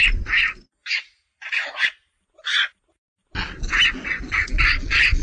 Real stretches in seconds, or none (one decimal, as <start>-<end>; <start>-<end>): 0.0-5.2